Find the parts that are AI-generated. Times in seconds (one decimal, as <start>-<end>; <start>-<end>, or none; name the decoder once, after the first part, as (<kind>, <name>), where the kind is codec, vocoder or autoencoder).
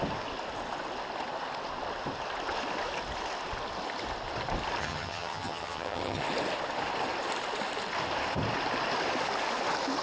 4.8-6.2 (vocoder, HiFi-GAN)